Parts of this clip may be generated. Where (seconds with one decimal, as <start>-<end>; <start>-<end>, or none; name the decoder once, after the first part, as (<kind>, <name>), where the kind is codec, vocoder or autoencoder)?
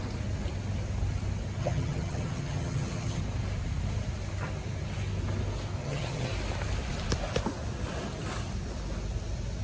1.6-3.2 (vocoder, HiFi-GAN); 5.8-6.3